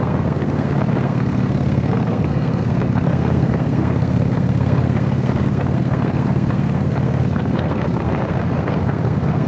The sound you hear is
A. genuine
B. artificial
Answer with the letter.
B